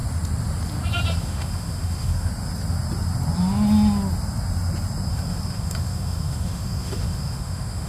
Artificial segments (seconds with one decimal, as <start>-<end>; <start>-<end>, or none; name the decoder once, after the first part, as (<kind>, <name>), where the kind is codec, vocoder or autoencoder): 1.2-2.3 (autoencoder, DAC-VAE); 5.1-7.9